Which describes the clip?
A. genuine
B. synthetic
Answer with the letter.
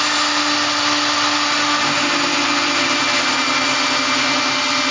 A